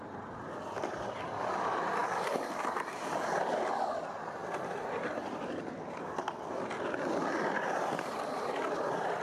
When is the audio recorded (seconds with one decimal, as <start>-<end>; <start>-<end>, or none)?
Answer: 0.0-9.2